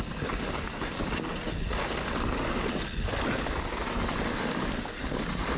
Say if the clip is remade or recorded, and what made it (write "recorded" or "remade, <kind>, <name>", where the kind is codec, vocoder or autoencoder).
recorded